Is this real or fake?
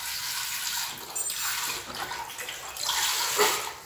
real